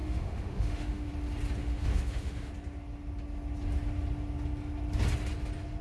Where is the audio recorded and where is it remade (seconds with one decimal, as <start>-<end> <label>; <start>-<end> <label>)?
0.0-1.1 remade; 1.1-1.6 recorded; 1.6-2.5 remade; 2.5-5.8 recorded